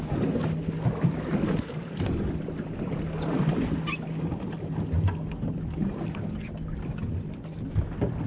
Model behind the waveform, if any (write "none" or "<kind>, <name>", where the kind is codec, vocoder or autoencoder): none